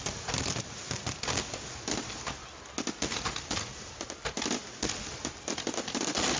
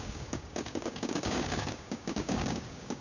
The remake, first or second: second